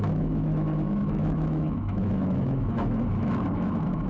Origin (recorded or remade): remade